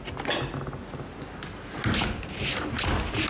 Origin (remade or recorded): recorded